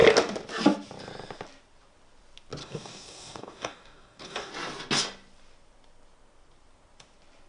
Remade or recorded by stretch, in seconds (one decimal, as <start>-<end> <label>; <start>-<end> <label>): 0.0-2.6 recorded; 2.6-4.5 remade; 4.5-7.5 recorded